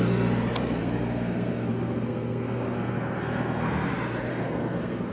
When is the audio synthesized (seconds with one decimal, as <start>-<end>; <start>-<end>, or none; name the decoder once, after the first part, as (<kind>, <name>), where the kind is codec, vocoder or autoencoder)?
0.8-3.9 (codec, SNAC); 4.3-5.1